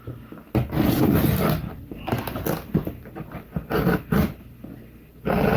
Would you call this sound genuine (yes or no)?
yes